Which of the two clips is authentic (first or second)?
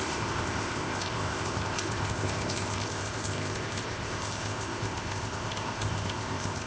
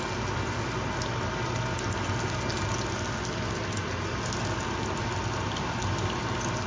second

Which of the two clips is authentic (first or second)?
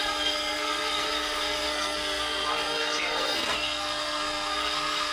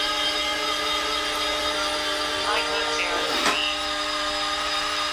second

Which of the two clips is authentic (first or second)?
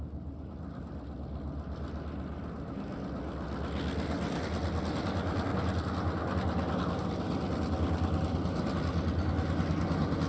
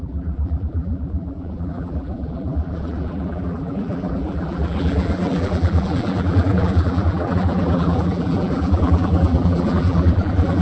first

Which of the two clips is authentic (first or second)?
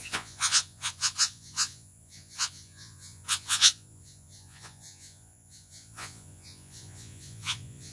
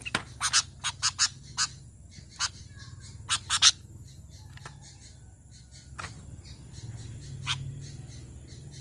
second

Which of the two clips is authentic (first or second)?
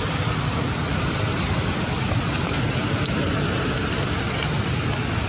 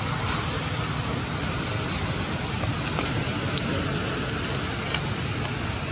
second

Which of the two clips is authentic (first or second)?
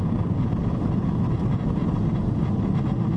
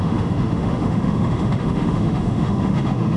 first